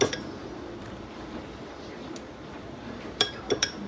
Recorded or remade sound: remade